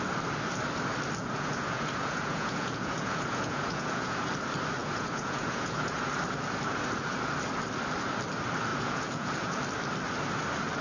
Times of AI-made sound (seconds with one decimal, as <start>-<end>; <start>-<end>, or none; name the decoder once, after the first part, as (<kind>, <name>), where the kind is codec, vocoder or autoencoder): 1.2-4.3 (vocoder, Vocos); 4.8-6.1; 8.7-9.6